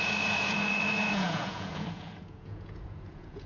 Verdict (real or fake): fake